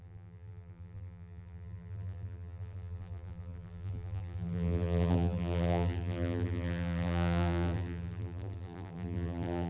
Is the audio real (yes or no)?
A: no